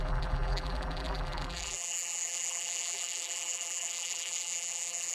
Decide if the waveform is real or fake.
fake